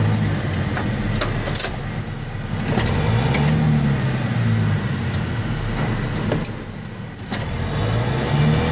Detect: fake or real real